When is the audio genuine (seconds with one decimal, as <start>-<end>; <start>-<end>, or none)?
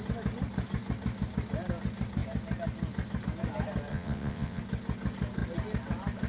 0.0-3.9; 4.6-6.3